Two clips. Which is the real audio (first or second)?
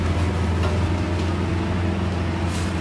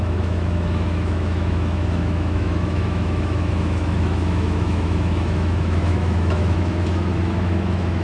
first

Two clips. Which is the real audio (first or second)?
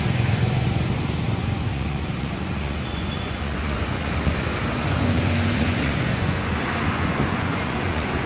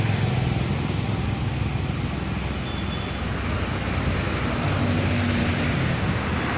second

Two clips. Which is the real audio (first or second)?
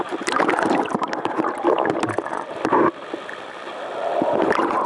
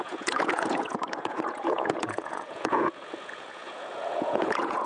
first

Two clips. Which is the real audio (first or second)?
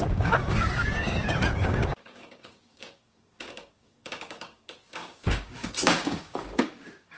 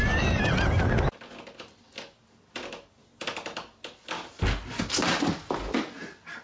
second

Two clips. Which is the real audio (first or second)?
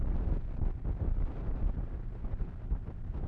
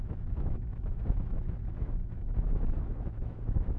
first